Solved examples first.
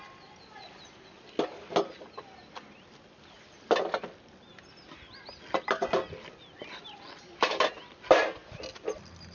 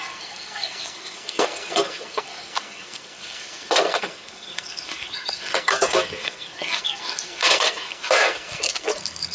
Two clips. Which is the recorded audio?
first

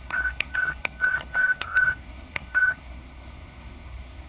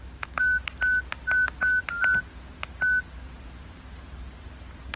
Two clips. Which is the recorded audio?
second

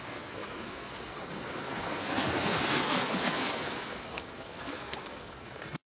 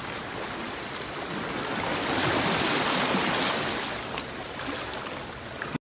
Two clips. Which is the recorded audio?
second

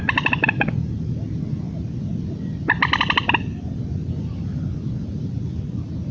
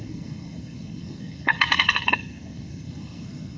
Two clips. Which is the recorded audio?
first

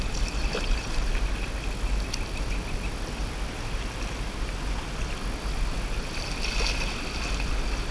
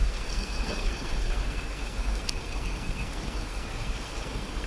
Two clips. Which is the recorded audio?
first